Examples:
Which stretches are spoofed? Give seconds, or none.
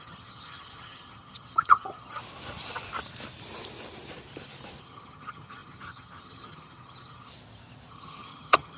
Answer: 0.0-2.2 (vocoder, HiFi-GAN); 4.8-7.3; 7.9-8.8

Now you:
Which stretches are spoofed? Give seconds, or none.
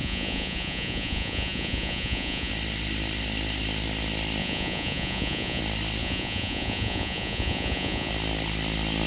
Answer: 0.0-2.5 (vocoder, Vocos); 4.4-5.6; 6.0-8.1